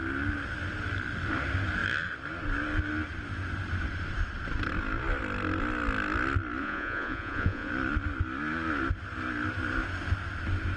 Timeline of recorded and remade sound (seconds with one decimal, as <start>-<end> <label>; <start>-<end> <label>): 0.0-6.6 recorded; 6.6-7.7 remade; 7.7-10.8 recorded